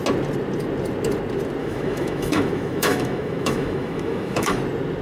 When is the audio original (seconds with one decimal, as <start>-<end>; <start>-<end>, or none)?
0.0-1.6; 4.6-5.0